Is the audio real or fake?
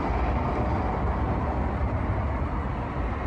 real